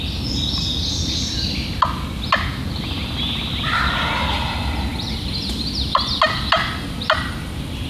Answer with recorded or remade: recorded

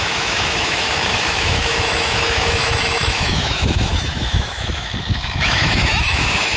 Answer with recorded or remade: remade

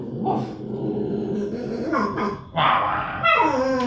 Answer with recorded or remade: recorded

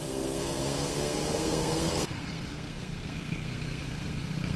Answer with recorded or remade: remade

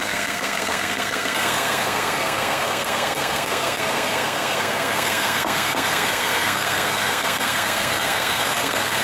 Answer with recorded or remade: remade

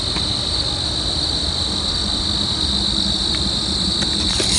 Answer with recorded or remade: recorded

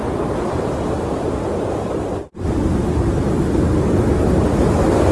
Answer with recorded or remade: recorded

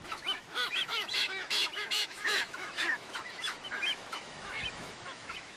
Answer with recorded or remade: remade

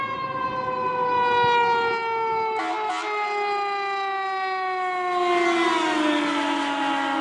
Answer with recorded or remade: recorded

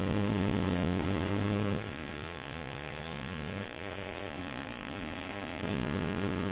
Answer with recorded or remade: remade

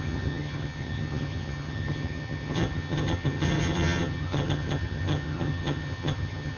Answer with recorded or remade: remade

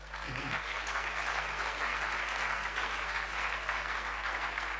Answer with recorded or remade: remade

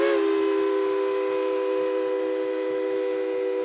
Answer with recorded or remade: recorded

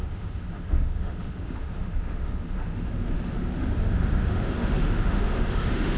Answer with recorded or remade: remade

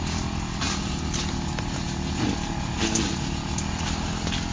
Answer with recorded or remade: recorded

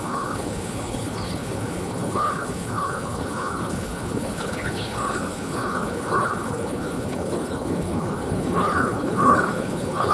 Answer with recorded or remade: remade